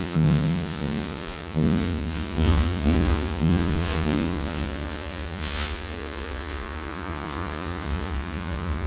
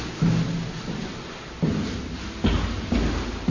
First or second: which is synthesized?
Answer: first